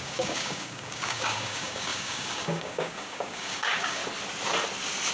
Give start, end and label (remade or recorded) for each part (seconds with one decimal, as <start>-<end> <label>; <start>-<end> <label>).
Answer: 0.0-4.0 remade; 4.0-5.1 recorded